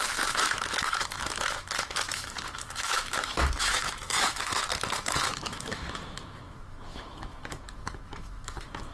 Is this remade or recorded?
remade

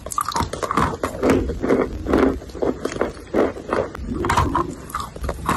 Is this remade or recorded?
recorded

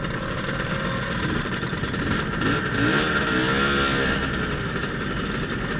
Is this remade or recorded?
recorded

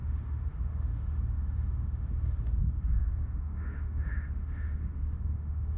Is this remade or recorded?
remade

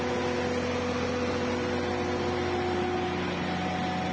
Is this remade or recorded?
recorded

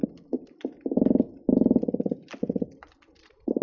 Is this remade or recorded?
recorded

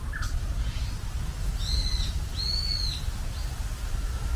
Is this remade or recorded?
recorded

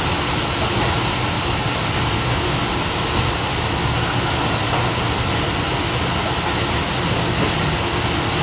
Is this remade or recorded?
recorded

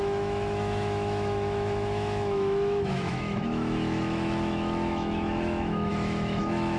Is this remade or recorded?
remade